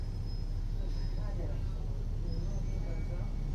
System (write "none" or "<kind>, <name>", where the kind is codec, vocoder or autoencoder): none